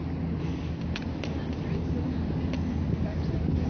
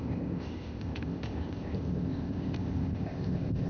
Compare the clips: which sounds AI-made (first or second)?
second